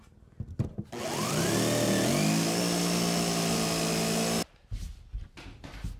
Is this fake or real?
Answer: real